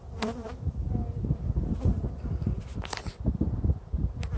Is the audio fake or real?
real